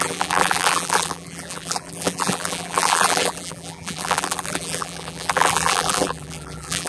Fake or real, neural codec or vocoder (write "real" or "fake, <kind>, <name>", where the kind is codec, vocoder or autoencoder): fake, vocoder, BigVGAN v2